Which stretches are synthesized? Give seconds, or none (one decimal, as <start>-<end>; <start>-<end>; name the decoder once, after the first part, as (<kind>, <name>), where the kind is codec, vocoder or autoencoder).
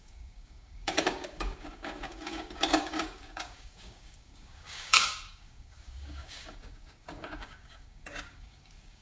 0.0-9.0 (codec, DAC)